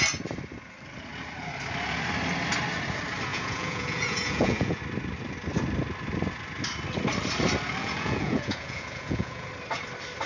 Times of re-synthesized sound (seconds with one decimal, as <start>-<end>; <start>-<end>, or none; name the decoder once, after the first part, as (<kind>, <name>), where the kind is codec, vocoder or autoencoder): 3.3-4.8 (vocoder, Vocos); 7.8-9.5